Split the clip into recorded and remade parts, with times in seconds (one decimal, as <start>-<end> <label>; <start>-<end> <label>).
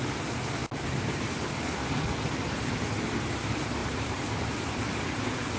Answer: 0.0-0.6 recorded; 0.6-1.3 remade; 1.3-3.8 recorded; 3.8-4.8 remade; 4.8-5.6 recorded